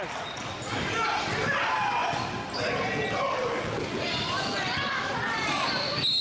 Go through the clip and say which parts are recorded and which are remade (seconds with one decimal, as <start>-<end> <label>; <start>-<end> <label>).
0.0-6.2 recorded